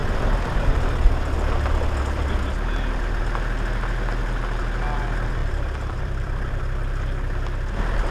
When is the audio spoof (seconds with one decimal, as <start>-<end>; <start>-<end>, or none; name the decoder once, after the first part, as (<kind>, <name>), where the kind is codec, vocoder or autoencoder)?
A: 5.4-6.6 (vocoder, BigVGAN v2)